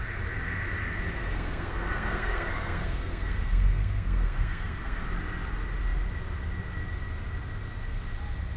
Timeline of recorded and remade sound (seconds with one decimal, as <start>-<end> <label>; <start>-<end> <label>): 0.0-1.2 recorded; 1.2-5.0 remade; 5.0-8.6 recorded

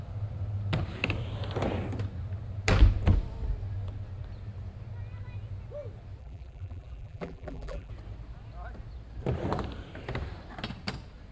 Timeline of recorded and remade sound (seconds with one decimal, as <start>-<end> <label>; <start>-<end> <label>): 0.0-6.2 recorded; 6.2-7.9 remade; 7.9-11.3 recorded

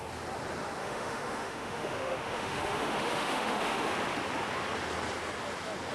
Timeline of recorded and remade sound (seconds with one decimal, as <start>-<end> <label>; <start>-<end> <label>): 0.0-0.8 recorded; 0.8-3.9 remade; 3.9-5.9 recorded